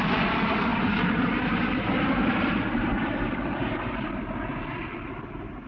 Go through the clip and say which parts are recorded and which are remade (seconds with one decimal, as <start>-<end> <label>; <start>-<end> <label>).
0.0-0.7 recorded; 0.7-4.1 remade; 4.1-5.7 recorded